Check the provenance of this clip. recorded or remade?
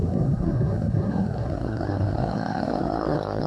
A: remade